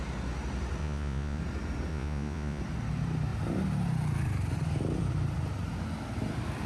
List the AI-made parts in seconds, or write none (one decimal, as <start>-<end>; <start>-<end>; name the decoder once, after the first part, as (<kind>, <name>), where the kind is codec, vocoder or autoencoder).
0.8-1.4 (vocoder, Vocos); 1.9-2.6